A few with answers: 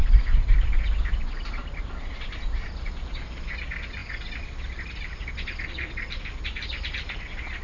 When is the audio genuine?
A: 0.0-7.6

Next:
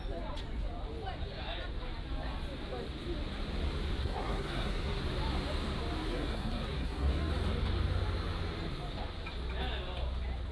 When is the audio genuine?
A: 0.0-4.0; 5.0-6.1; 7.3-10.5